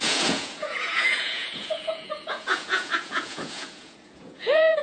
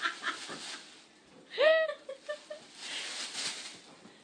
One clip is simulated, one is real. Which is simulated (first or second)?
first